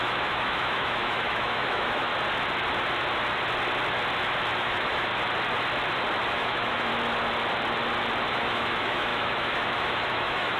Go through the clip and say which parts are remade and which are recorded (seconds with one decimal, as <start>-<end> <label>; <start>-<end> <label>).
0.0-2.1 remade; 2.1-4.6 recorded; 4.6-5.1 remade; 5.1-6.3 recorded; 6.3-6.9 remade; 6.9-8.3 recorded; 8.3-10.6 remade